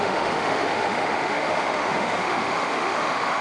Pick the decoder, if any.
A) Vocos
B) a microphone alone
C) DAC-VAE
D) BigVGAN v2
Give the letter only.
C